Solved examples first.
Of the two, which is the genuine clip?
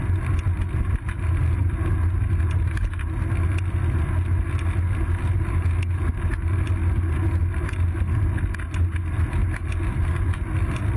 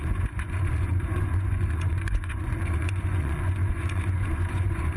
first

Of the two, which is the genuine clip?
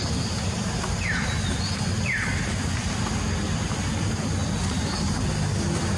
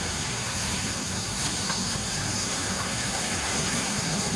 first